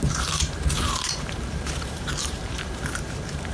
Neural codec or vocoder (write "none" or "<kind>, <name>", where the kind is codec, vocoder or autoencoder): vocoder, BigVGAN v2